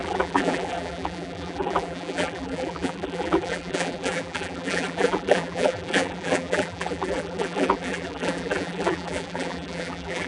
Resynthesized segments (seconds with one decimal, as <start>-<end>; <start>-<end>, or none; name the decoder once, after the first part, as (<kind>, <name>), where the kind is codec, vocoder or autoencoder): 0.0-10.3 (vocoder, BigVGAN v2)